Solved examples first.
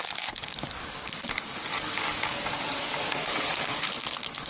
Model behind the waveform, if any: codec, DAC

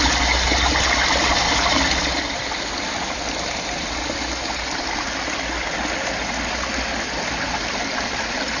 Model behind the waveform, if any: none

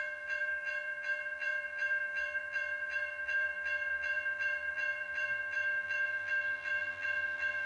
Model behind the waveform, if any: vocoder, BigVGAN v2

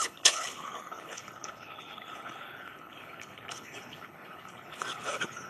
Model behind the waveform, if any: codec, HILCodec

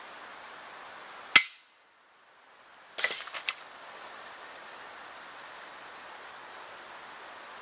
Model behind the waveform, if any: none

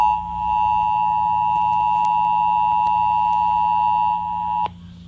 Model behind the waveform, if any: none